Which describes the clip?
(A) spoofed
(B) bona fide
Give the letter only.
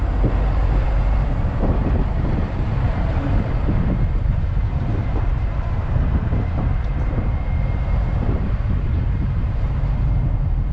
A